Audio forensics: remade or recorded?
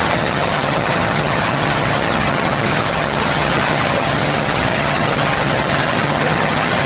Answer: remade